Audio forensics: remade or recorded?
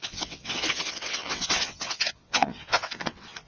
remade